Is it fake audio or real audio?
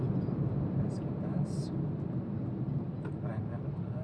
real